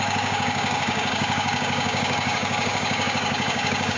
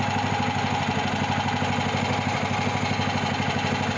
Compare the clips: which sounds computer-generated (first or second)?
first